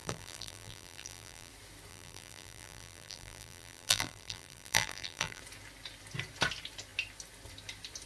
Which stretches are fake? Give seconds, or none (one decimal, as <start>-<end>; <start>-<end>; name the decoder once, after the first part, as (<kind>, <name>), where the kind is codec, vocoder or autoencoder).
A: 0.0-1.5 (vocoder, BigVGAN v2); 1.9-5.4